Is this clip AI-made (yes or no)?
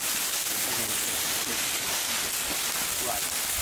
no